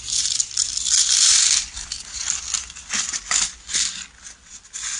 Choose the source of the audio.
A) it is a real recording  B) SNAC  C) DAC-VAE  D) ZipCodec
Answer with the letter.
A